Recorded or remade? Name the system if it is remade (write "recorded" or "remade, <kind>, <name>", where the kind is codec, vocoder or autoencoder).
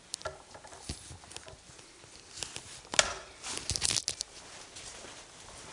recorded